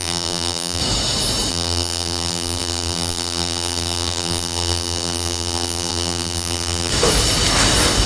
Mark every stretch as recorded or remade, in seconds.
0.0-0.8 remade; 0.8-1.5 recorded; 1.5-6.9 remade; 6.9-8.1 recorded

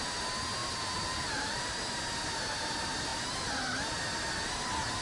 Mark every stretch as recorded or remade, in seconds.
0.0-0.6 recorded; 0.6-1.7 remade; 1.7-5.0 recorded

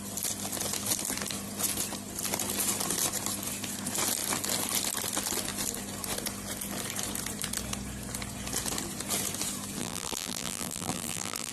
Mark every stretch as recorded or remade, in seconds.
0.0-9.8 recorded; 9.8-11.5 remade

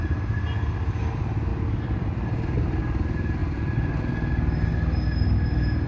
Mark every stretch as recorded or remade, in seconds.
0.0-1.5 recorded; 1.5-2.8 remade; 2.8-5.9 recorded

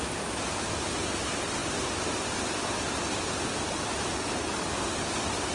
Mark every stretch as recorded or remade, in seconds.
0.0-5.5 remade

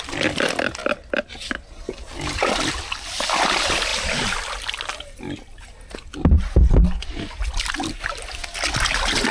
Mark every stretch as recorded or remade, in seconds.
0.0-9.3 recorded